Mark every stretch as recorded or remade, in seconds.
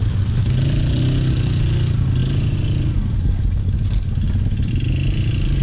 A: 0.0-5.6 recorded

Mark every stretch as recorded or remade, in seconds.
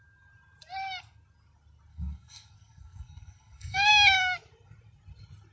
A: 0.0-1.9 recorded; 1.9-3.9 remade; 3.9-5.5 recorded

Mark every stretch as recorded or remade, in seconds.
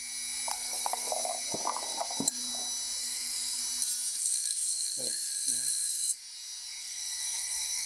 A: 0.0-0.5 recorded; 0.5-1.1 remade; 1.1-3.0 recorded; 3.0-3.6 remade; 3.6-4.2 recorded; 4.2-6.2 remade; 6.2-6.8 recorded; 6.8-7.9 remade